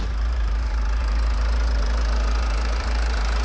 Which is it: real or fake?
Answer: fake